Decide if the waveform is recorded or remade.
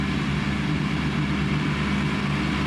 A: recorded